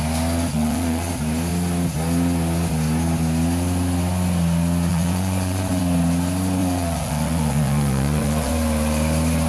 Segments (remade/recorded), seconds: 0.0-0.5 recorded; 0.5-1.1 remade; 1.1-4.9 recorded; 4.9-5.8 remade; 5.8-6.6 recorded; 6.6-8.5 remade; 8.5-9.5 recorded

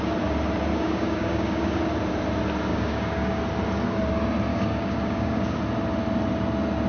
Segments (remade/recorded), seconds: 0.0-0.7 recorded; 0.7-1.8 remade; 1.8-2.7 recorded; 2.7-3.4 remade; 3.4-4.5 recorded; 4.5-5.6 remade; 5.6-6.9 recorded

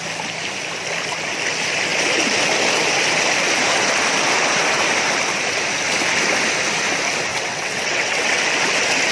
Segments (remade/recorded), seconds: 0.0-7.3 recorded; 7.3-8.4 remade; 8.4-9.1 recorded

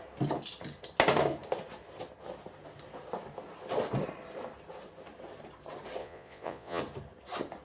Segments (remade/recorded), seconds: 0.0-6.0 recorded; 6.0-6.8 remade; 6.8-7.6 recorded